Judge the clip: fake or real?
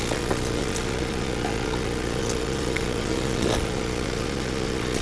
fake